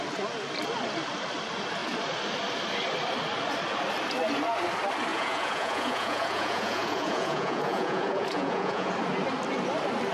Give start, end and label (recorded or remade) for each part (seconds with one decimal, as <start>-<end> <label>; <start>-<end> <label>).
0.0-5.1 recorded; 5.1-8.9 remade; 8.9-10.1 recorded